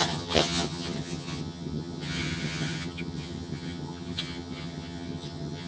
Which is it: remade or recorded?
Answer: remade